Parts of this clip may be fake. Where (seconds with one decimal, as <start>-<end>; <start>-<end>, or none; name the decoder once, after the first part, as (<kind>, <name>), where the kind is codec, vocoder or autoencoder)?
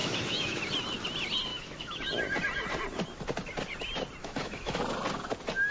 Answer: 0.0-0.6 (autoencoder, DAC-VAE); 1.5-2.0; 4.2-4.8